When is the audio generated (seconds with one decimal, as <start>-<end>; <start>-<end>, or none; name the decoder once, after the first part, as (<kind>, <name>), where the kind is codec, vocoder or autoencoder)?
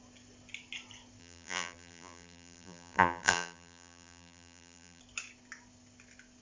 1.2-5.0 (vocoder, BigVGAN v2)